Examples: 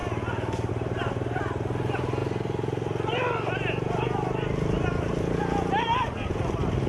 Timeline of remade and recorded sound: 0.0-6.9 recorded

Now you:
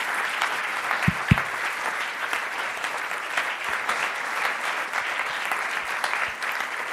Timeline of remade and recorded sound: 0.0-6.9 recorded

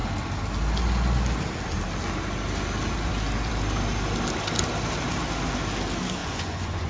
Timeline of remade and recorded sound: 0.0-6.2 recorded; 6.2-6.9 remade